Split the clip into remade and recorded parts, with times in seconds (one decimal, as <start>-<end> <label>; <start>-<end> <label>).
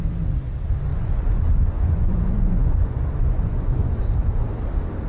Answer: 0.0-0.9 recorded; 0.9-4.0 remade; 4.0-5.1 recorded